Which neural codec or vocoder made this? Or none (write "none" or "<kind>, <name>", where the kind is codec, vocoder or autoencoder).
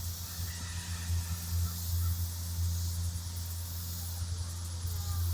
none